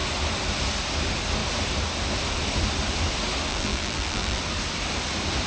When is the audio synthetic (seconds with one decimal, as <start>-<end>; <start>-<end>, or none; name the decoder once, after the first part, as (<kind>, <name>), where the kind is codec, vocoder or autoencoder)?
3.5-4.4 (vocoder, BigVGAN v2)